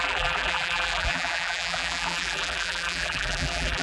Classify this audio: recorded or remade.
remade